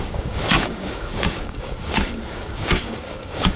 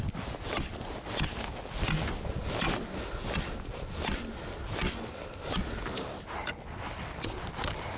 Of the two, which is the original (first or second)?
second